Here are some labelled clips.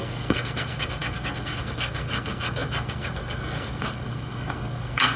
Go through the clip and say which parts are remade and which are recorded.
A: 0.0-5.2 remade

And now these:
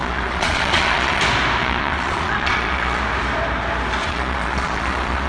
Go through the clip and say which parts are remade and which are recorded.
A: 0.0-1.2 remade; 1.2-1.6 recorded; 1.6-3.0 remade; 3.0-4.0 recorded; 4.0-5.3 remade

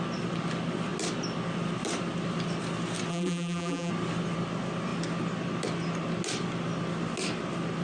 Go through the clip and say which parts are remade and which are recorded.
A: 0.0-3.1 recorded; 3.1-3.9 remade; 3.9-7.8 recorded

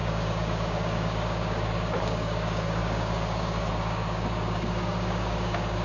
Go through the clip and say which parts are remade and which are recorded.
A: 0.0-5.8 remade

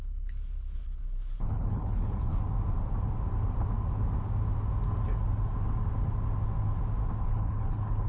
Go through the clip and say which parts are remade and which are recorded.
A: 0.0-2.3 remade; 2.3-7.2 recorded; 7.2-8.1 remade

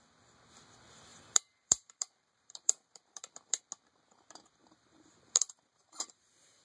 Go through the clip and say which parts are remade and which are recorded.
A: 0.0-1.1 recorded; 1.1-3.6 remade; 3.6-4.6 recorded; 4.6-6.6 remade